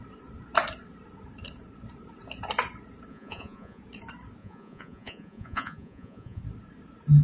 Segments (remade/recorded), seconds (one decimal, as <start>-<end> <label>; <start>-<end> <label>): 0.0-3.1 recorded; 3.1-3.8 remade; 3.8-4.4 recorded; 4.4-6.4 remade; 6.4-7.2 recorded